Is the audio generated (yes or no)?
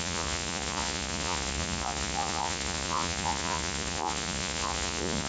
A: yes